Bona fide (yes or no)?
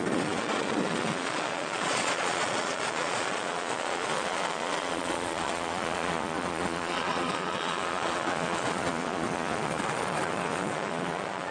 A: no